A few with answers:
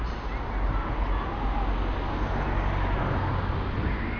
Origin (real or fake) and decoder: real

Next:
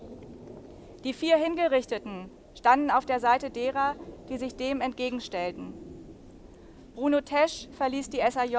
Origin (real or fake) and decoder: real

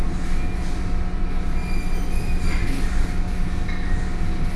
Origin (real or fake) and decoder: real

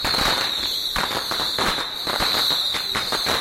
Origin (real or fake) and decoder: fake, vocoder, BigVGAN v2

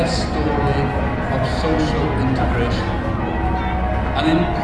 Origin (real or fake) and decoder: real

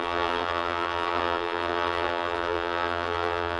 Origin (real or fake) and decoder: fake, vocoder, BigVGAN v2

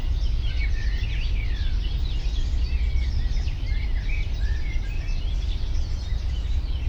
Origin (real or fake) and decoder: real